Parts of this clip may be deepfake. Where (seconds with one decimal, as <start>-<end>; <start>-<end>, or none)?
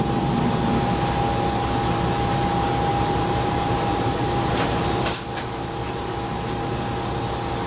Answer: 2.9-4.8